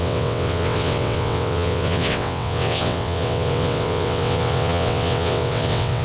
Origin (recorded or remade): remade